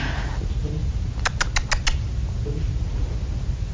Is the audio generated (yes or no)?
no